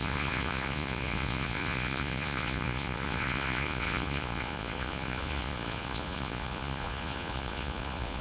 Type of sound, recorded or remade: remade